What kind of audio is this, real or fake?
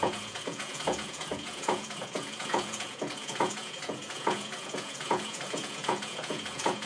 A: fake